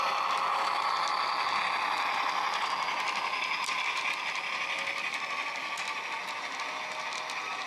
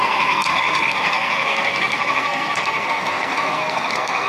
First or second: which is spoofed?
second